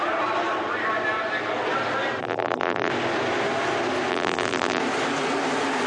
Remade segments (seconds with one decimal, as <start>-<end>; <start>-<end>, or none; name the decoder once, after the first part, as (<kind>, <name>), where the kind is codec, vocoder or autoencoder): 2.2-2.9 (vocoder, BigVGAN v2); 4.1-4.8